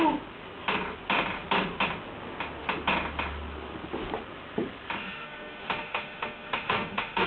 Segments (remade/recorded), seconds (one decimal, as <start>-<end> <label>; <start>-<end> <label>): 0.0-5.0 recorded; 5.0-7.3 remade